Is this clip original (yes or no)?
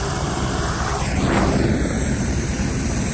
no